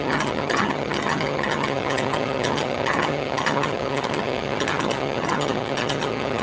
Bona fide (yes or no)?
no